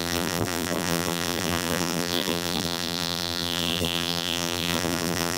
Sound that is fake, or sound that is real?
fake